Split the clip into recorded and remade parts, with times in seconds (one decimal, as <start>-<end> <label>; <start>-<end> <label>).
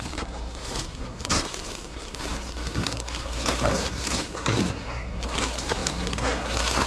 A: 0.0-6.9 remade